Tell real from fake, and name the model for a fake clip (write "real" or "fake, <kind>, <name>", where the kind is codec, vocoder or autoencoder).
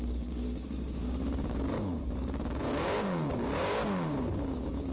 fake, codec, DAC